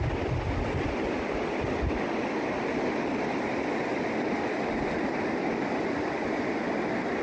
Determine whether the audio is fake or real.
real